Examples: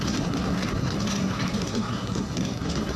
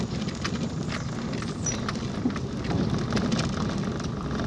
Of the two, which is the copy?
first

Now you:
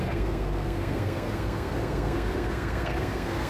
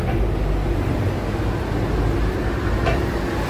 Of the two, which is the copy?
first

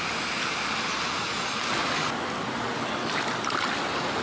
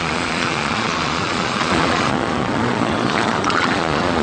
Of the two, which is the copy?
second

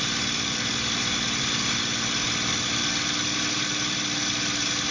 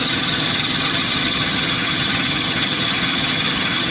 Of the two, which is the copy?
second